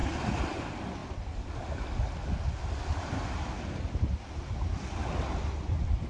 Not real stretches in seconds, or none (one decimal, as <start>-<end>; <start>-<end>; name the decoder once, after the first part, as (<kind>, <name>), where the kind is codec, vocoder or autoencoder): none